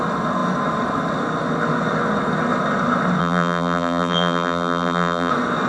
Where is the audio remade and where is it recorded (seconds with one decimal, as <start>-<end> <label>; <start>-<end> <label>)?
0.0-3.2 recorded; 3.2-5.3 remade; 5.3-5.7 recorded